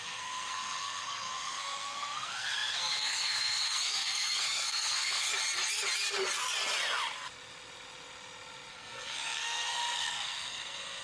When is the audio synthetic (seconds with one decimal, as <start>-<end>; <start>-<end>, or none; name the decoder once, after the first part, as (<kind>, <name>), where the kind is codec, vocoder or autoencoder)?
0.0-5.3 (codec, SNAC); 8.7-11.0